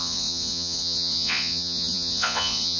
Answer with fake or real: fake